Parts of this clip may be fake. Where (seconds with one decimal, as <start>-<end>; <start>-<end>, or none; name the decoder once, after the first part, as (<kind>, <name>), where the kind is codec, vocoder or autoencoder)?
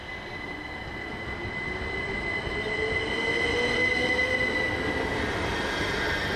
none